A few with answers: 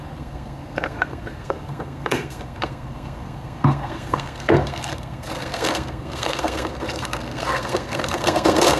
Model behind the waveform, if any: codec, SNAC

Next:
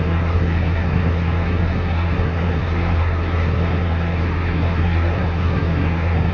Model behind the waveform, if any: codec, SNAC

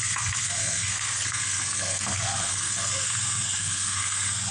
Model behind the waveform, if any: codec, SNAC